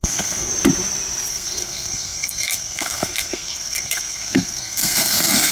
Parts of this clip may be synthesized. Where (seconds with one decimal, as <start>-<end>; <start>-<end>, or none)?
0.0-0.5; 1.3-5.5